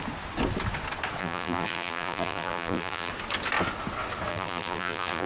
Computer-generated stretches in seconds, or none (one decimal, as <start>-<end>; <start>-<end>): 1.2-3.1; 4.3-5.3